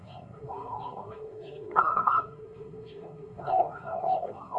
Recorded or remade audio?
remade